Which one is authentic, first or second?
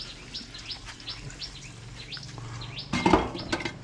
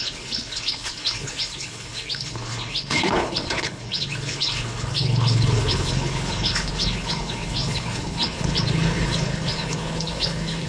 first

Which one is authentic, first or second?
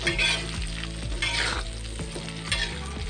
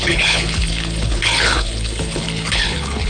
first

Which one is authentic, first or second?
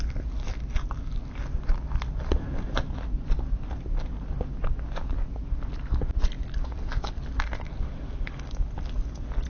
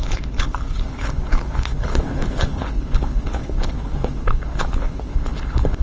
first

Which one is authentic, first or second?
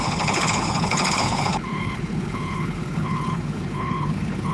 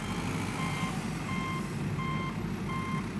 second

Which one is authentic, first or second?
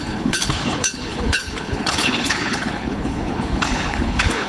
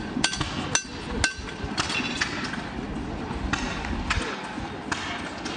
second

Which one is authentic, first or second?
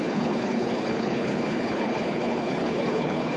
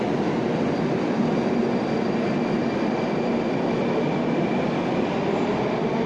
second